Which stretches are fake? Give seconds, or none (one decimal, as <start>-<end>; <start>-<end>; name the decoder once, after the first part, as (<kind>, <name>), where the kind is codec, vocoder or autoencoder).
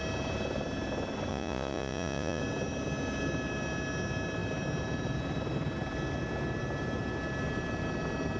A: 1.3-2.4 (vocoder, Vocos)